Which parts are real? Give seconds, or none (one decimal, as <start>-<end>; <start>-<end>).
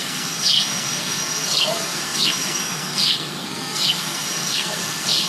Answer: none